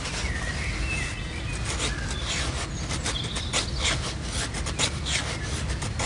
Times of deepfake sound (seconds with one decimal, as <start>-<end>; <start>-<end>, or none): none